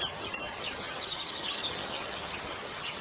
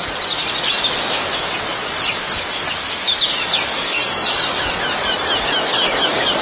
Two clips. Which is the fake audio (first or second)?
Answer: first